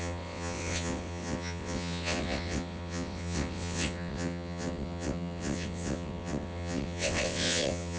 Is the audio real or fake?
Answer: fake